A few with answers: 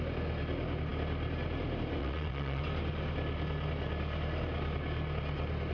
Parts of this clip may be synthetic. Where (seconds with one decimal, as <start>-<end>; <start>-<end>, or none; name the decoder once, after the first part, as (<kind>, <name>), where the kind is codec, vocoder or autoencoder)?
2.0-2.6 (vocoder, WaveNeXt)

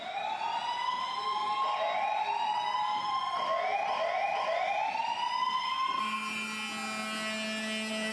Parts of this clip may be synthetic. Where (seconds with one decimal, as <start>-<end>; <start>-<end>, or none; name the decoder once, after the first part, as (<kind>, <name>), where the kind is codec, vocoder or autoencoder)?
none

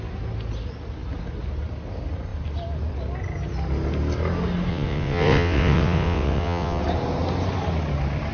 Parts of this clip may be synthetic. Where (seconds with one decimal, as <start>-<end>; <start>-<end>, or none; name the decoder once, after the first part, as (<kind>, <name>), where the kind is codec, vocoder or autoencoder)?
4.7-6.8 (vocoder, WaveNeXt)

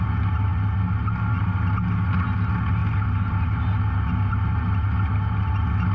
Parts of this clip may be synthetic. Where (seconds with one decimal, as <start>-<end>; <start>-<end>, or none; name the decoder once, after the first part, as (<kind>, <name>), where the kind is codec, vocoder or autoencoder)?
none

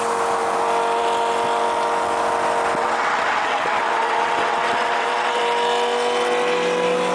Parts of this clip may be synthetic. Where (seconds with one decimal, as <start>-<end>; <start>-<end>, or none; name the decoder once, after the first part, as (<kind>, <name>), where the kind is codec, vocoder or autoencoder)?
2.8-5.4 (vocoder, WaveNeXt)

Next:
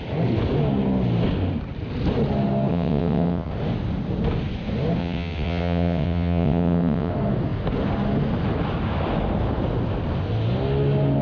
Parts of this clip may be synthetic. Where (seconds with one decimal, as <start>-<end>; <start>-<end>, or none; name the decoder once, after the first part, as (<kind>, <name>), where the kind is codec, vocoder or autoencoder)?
2.7-3.5 (vocoder, WaveNeXt); 5.0-7.1

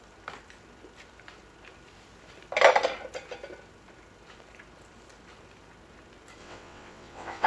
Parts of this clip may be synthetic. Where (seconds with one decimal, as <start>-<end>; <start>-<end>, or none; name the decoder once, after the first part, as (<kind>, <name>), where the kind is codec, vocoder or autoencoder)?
6.4-7.5 (vocoder, WaveNeXt)